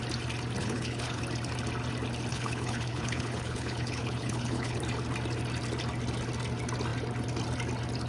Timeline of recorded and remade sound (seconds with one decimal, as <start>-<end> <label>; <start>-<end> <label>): 0.0-0.6 recorded; 0.6-1.2 remade; 1.2-2.3 recorded; 2.3-4.8 remade; 4.8-8.1 recorded